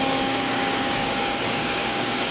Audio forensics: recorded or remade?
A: remade